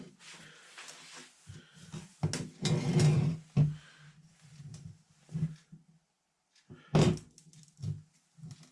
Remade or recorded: recorded